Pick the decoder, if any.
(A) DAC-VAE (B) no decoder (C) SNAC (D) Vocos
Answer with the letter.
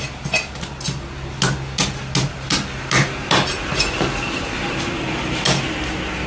B